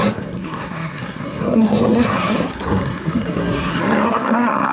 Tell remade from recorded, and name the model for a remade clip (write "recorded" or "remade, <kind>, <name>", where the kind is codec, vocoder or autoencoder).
remade, codec, SNAC